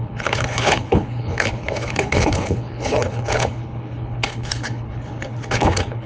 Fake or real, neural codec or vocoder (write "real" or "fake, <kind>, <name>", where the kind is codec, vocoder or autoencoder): fake, codec, HILCodec